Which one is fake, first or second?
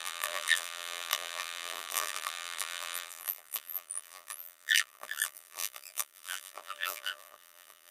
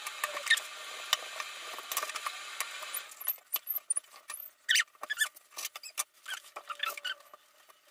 first